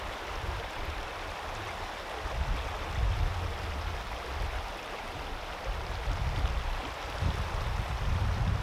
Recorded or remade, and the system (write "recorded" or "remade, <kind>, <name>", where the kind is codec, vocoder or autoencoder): recorded